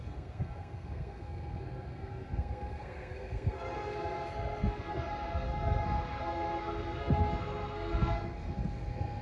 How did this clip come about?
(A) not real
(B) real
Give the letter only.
A